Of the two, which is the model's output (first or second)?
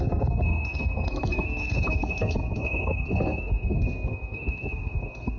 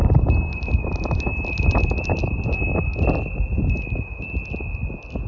first